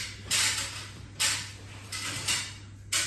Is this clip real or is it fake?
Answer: real